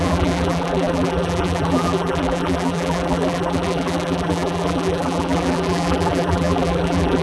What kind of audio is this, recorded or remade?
remade